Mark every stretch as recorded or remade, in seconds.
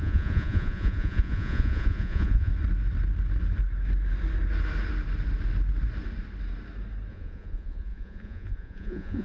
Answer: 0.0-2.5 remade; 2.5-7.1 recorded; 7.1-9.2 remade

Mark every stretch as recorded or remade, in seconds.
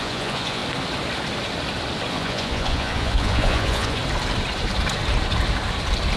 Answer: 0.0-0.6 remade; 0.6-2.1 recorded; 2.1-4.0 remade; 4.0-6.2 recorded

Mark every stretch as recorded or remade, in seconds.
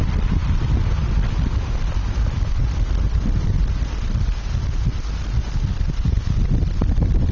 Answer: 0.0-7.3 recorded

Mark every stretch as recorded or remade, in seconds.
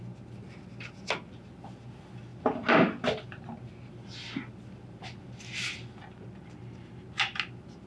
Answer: 0.0-7.9 recorded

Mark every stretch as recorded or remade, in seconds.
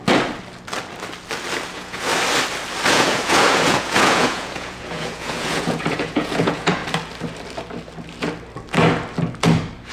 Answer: 0.0-1.7 recorded; 1.7-2.1 remade; 2.1-2.9 recorded; 2.9-6.8 remade; 6.8-9.9 recorded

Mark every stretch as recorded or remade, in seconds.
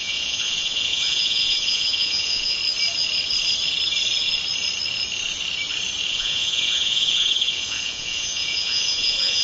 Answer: 0.0-2.6 remade; 2.6-6.1 recorded; 6.1-9.4 remade